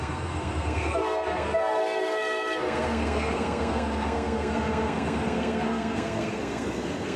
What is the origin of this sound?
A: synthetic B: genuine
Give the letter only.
A